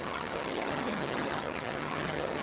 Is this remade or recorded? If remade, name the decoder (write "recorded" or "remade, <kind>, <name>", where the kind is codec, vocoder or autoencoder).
remade, vocoder, HiFi-GAN